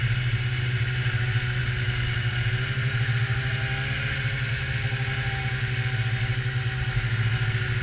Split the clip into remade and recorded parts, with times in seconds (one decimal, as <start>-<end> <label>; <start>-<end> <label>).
0.0-7.8 recorded